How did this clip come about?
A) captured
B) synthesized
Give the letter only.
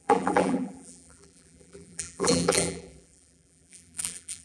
B